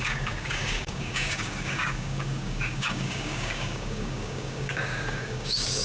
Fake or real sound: fake